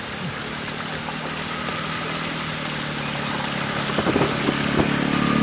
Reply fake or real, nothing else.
real